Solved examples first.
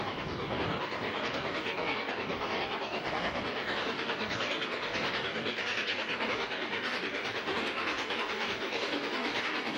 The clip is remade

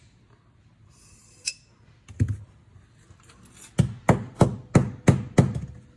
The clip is recorded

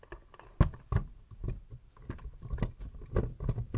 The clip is recorded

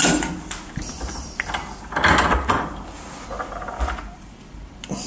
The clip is recorded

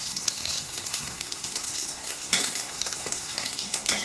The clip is remade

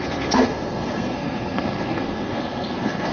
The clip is remade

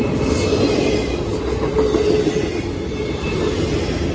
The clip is recorded